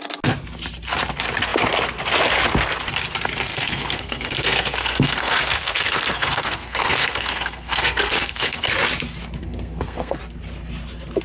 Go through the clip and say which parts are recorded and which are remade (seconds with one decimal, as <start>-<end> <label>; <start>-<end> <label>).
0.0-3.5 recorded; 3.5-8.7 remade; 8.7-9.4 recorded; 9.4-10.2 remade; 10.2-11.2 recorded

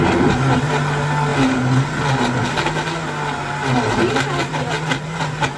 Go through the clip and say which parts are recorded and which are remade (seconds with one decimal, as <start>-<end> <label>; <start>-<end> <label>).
0.0-5.6 recorded

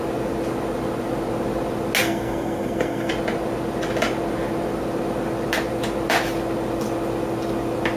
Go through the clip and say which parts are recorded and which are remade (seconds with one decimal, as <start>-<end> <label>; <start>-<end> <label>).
0.0-2.0 recorded; 2.0-3.1 remade; 3.1-8.0 recorded

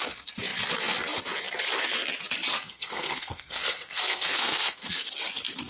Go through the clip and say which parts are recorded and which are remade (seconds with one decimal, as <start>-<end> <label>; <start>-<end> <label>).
0.0-2.5 recorded; 2.5-5.1 remade; 5.1-5.7 recorded

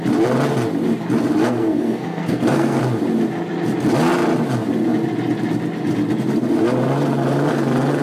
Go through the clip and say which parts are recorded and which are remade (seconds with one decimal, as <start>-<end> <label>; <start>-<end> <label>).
0.0-1.4 recorded; 1.4-2.8 remade; 2.8-8.0 recorded

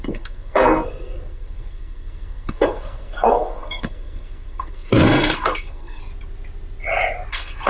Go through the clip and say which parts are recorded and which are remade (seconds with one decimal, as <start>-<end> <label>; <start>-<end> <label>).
0.0-6.0 remade; 6.0-7.3 recorded; 7.3-7.7 remade

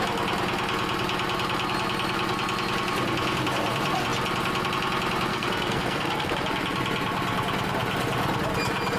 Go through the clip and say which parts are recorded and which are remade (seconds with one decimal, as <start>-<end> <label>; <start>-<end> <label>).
0.0-5.3 recorded; 5.3-6.3 remade; 6.3-9.0 recorded